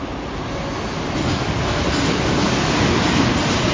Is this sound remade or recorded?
recorded